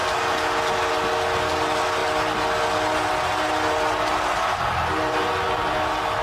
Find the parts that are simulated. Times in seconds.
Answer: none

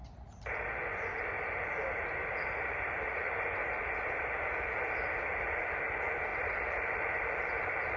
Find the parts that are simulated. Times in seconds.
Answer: 2.2-4.5 (vocoder, BigVGAN v2); 6.3-7.2